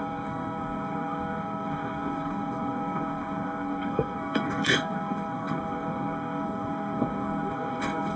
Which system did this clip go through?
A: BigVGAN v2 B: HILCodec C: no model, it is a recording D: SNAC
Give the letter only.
D